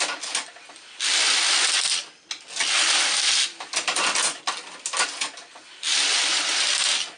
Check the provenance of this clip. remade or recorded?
recorded